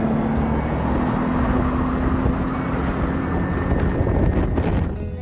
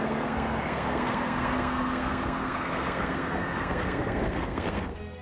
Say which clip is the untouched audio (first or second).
first